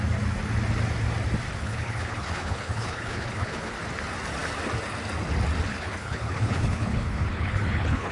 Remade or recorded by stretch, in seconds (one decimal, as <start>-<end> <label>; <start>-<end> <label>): 0.0-1.6 recorded; 1.6-3.7 remade; 3.7-5.7 recorded; 5.7-8.1 remade